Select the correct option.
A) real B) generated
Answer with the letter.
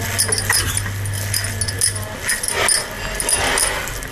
A